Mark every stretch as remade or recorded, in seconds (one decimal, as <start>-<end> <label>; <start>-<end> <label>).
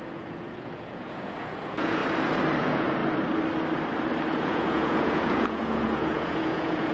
0.0-2.0 remade; 2.0-2.6 recorded; 2.6-3.0 remade; 3.0-4.4 recorded; 4.4-6.9 remade